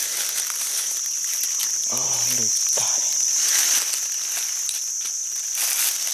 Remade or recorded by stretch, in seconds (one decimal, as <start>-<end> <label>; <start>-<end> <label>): 0.0-6.1 recorded